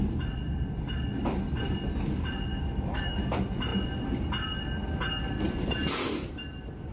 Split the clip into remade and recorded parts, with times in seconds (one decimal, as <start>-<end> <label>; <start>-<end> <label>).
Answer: 0.0-2.5 recorded; 2.5-3.2 remade; 3.2-6.9 recorded